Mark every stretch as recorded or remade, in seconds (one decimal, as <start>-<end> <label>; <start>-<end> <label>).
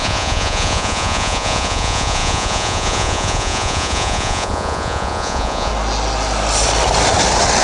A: 0.0-5.7 remade; 5.7-7.6 recorded